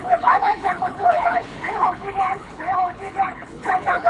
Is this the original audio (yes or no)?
no